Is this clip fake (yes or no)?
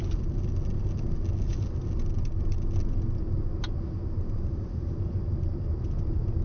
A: no